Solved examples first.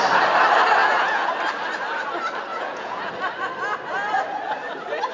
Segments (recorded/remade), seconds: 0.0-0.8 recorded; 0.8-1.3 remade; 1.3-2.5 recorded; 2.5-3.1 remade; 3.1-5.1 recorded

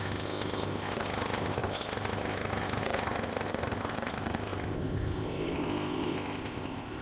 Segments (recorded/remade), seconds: 0.0-7.0 remade